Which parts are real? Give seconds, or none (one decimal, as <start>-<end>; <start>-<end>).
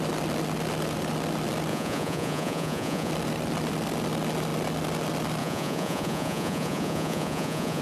0.0-1.7; 3.1-5.4